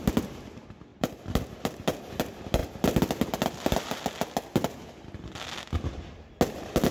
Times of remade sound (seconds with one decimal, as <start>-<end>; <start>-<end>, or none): 0.9-2.1